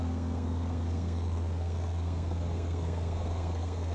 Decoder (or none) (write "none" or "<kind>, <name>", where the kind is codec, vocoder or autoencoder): codec, SNAC